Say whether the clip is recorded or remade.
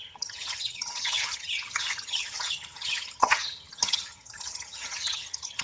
remade